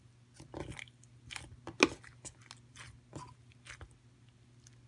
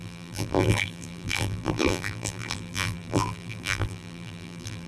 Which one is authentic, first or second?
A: first